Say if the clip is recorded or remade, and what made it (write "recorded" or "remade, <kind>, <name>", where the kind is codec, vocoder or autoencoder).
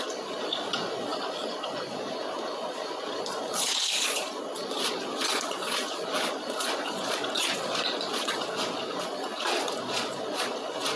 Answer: remade, vocoder, Vocos